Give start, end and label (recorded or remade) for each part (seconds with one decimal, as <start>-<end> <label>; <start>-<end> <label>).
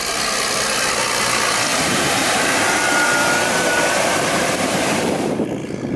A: 0.0-1.7 recorded; 1.7-5.3 remade; 5.3-6.0 recorded